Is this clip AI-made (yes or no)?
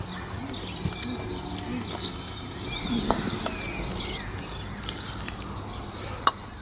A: no